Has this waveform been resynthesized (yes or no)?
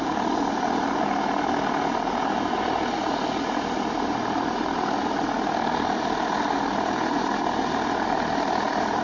no